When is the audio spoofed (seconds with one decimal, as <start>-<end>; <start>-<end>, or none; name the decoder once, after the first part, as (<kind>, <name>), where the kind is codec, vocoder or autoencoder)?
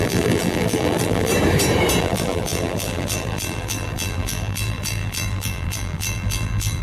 0.0-1.3 (vocoder, BigVGAN v2); 2.0-6.8